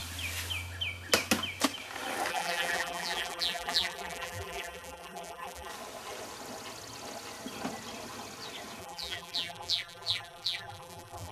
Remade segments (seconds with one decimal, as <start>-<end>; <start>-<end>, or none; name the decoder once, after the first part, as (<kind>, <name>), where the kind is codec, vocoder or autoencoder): 2.3-5.7 (vocoder, BigVGAN v2); 8.8-11.3